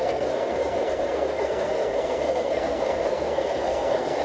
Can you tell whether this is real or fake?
fake